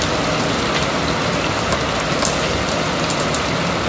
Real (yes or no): yes